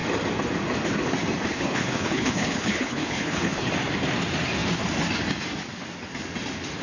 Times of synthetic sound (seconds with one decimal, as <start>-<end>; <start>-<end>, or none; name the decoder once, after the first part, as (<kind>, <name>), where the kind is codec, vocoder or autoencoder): 1.4-3.7 (codec, HILCodec)